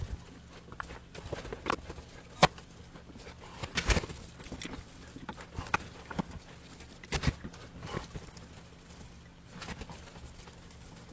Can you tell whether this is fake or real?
real